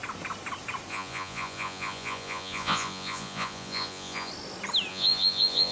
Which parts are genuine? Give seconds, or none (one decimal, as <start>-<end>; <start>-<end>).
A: 0.0-0.9; 4.3-4.9